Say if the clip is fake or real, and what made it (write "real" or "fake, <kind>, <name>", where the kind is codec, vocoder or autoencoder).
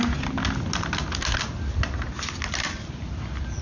real